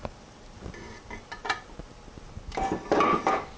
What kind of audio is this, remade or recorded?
recorded